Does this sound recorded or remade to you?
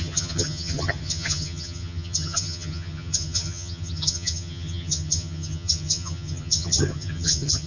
remade